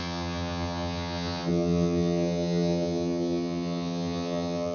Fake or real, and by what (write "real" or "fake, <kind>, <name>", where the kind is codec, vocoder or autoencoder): fake, vocoder, HiFi-GAN